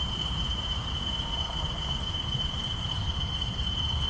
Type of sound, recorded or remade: remade